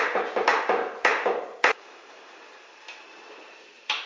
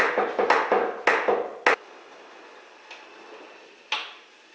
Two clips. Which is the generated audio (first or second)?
first